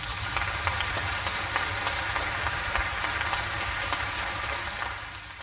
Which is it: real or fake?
real